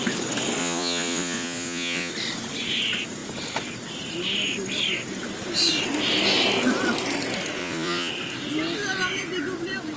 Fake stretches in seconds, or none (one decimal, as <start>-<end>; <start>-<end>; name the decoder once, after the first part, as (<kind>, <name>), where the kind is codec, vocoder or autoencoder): 0.6-2.1 (vocoder, Vocos); 7.6-8.1